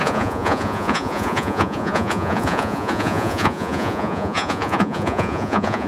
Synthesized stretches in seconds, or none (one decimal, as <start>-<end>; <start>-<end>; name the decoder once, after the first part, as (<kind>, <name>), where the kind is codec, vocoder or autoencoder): 0.0-5.9 (vocoder, Vocos)